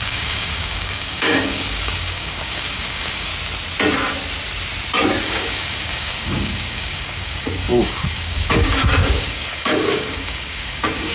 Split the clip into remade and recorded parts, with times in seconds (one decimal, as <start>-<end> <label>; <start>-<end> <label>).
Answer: 0.0-3.3 remade; 3.3-5.2 recorded; 5.2-11.1 remade